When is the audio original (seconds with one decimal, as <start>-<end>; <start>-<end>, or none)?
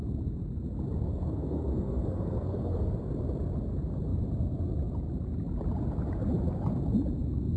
0.0-1.1; 2.9-7.6